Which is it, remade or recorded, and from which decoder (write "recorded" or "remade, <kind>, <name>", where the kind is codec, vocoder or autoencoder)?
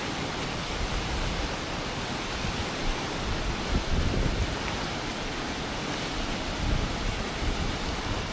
recorded